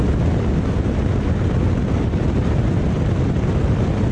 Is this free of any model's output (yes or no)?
yes